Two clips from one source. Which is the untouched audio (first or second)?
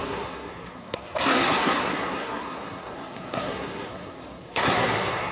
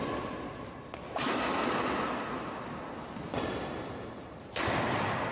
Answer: second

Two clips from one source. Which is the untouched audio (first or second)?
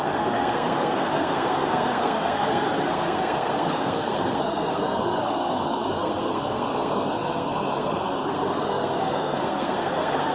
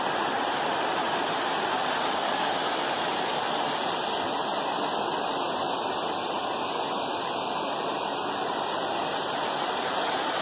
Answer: second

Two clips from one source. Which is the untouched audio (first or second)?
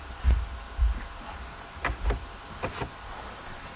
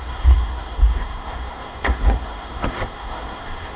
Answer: first